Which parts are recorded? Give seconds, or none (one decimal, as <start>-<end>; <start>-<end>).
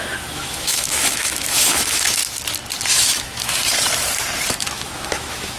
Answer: 2.2-2.9; 3.6-4.6